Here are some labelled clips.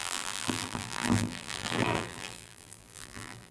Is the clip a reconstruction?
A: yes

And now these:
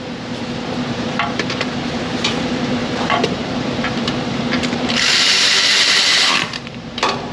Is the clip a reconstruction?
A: yes